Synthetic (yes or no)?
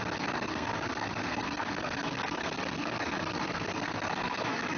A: yes